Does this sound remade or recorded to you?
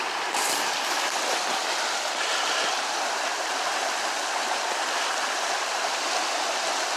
recorded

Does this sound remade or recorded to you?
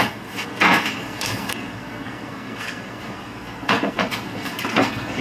remade